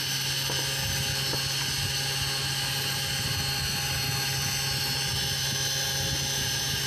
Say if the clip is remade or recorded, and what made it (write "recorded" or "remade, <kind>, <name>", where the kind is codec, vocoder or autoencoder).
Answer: recorded